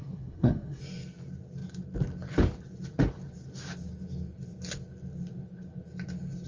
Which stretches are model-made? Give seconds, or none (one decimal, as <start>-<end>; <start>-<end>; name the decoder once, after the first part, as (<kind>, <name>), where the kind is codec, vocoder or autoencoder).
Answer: 0.0-0.8 (codec, SNAC)